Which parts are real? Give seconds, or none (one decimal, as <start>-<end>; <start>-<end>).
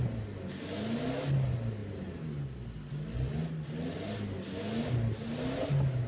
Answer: 0.0-6.1